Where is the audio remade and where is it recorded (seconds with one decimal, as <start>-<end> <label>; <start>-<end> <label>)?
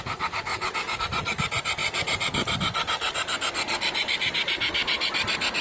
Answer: 0.0-0.5 recorded; 0.5-1.0 remade; 1.0-5.6 recorded